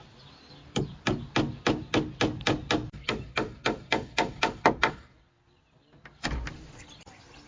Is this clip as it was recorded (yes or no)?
yes